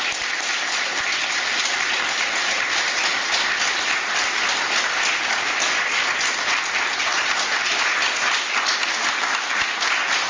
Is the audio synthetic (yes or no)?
no